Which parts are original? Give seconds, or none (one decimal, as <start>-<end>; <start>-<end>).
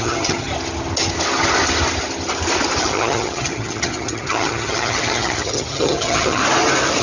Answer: 0.5-2.8; 6.4-7.0